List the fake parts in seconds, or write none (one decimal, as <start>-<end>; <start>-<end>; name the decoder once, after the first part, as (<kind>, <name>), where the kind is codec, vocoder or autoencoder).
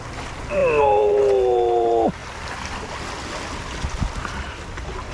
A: 0.6-1.2 (vocoder, BigVGAN v2); 2.2-3.3